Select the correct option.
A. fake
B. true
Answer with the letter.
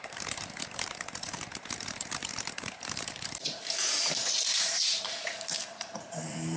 A